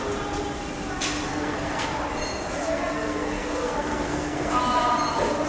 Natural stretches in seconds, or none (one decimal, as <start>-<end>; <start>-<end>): 0.0-1.3; 1.9-2.6; 4.6-5.5